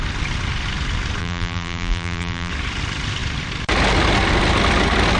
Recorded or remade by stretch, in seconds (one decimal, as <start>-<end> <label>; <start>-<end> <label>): 0.0-1.2 recorded; 1.2-2.5 remade; 2.5-5.2 recorded